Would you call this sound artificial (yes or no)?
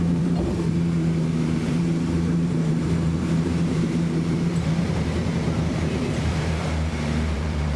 yes